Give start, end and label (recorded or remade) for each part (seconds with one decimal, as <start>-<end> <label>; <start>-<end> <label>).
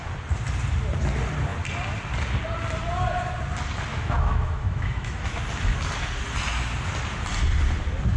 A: 0.0-3.9 recorded; 3.9-5.4 remade; 5.4-8.2 recorded